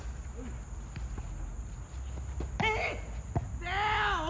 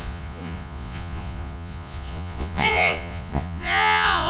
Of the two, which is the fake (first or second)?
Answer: second